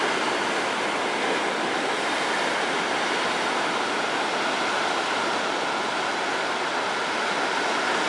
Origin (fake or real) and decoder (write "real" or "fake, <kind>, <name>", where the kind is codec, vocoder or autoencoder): real